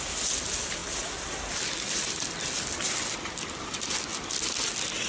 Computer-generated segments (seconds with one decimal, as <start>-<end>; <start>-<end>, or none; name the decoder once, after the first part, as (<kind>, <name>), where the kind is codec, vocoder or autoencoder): none